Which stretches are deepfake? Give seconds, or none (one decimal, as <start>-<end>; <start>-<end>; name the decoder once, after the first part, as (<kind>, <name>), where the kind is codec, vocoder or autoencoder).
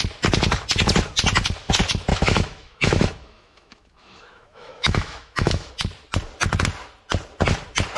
2.1-5.7 (autoencoder, DAC-VAE)